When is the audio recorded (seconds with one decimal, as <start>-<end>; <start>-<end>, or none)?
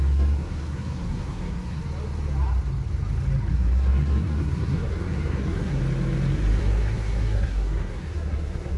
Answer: 1.8-3.5; 5.8-6.6